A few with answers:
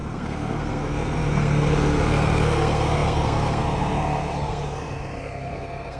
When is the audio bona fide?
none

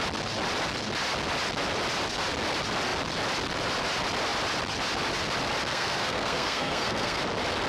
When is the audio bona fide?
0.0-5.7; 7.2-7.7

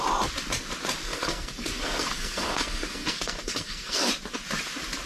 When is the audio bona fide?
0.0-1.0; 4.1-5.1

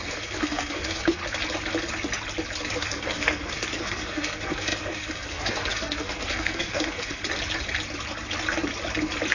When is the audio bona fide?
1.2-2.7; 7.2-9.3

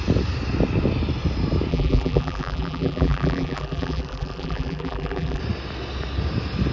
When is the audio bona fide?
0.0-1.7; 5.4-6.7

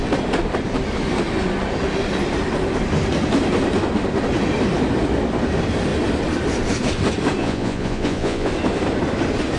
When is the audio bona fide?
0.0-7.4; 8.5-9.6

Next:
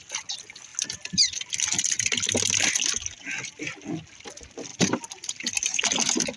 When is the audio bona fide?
0.0-4.7; 5.5-6.4